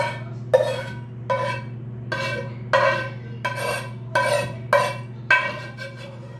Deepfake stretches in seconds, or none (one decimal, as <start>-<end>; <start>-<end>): none